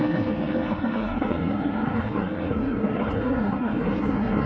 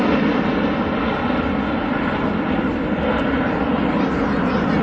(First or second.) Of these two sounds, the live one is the second